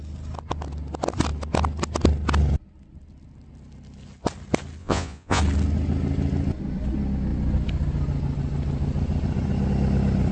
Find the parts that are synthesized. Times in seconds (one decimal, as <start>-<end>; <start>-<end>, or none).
4.8-5.4